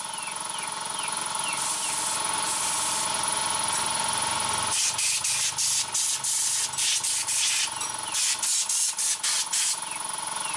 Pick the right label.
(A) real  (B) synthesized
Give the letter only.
A